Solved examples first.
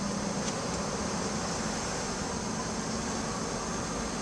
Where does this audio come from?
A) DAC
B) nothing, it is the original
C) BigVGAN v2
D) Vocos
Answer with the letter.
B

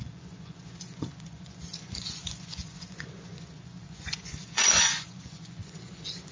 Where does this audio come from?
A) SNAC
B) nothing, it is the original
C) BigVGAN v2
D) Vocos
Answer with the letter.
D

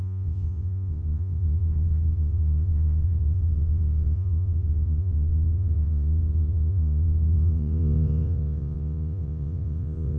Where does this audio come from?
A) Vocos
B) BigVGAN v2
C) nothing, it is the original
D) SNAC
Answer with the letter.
A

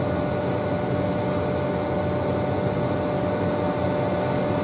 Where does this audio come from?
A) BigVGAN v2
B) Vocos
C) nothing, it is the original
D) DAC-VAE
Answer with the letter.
C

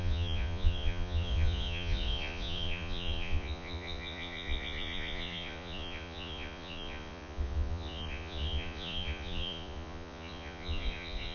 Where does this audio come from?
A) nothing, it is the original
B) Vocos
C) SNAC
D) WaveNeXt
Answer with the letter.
B